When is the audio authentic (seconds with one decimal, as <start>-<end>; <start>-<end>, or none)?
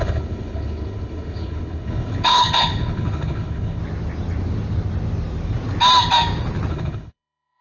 3.8-6.7